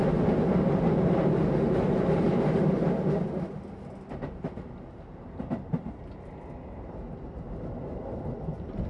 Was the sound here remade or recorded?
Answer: recorded